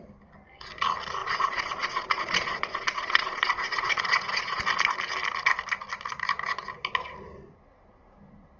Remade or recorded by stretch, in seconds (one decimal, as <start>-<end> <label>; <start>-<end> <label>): 0.0-1.2 recorded; 1.2-4.6 remade; 4.6-8.6 recorded